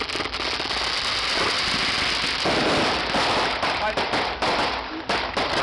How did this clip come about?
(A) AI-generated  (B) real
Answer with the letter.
B